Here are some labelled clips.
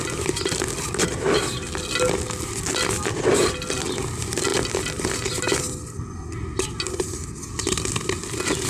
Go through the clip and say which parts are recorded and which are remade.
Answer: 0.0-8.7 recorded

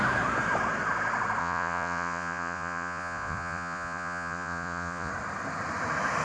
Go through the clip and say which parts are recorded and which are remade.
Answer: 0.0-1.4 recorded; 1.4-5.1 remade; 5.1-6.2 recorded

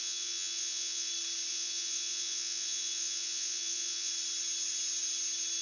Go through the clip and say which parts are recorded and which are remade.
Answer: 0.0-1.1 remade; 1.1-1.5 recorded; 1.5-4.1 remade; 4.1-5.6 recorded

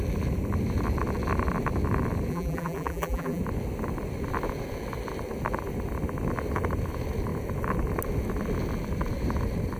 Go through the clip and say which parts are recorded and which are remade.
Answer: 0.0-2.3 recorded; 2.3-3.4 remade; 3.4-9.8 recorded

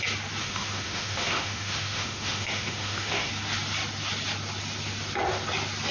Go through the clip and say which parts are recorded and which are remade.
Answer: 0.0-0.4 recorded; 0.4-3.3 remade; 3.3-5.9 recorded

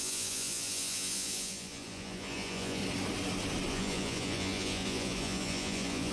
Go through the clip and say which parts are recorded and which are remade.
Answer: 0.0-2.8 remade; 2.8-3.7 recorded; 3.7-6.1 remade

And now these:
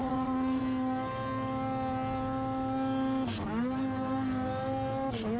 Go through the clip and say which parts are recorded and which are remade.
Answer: 0.0-0.6 remade; 0.6-5.4 recorded